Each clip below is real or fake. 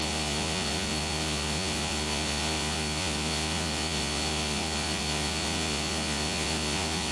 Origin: fake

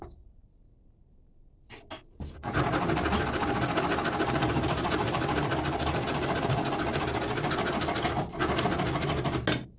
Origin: real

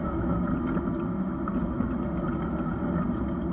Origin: real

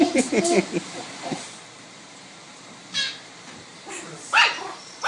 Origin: fake